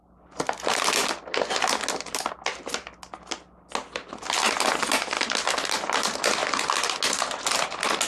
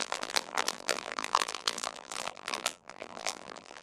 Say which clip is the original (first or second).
first